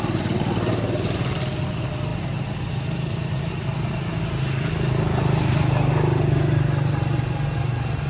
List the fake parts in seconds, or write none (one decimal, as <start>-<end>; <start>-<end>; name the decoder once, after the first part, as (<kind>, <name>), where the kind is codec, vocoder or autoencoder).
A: none